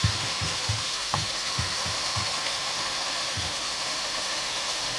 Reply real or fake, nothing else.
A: fake